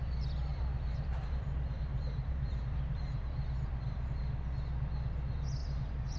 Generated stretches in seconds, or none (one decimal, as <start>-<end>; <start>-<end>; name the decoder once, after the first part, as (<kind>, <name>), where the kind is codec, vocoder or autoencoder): 0.5-4.2 (vocoder, BigVGAN v2); 5.6-6.2

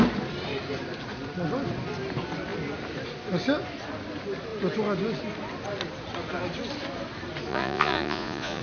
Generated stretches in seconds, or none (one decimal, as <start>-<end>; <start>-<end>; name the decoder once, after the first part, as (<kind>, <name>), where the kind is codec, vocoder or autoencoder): 7.5-8.6 (vocoder, Vocos)

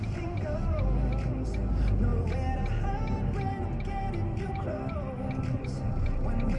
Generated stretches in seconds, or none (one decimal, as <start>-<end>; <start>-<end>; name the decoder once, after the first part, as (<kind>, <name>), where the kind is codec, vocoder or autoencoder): none

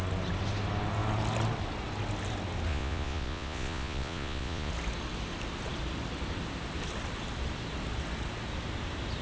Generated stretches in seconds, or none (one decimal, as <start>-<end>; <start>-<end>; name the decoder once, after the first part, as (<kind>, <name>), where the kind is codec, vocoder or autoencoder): 2.7-4.7 (vocoder, Vocos)

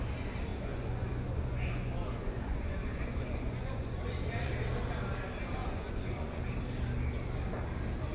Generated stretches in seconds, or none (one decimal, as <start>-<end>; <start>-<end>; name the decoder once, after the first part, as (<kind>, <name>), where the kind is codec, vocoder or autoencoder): 0.5-4.5 (vocoder, Vocos); 5.6-6.4

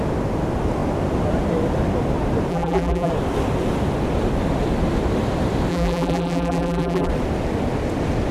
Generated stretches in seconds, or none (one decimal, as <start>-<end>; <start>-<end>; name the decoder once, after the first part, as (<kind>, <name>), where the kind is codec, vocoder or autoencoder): 2.5-3.1 (vocoder, BigVGAN v2); 5.7-7.1